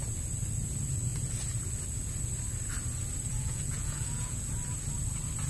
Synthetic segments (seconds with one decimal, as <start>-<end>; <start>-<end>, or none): 3.3-4.5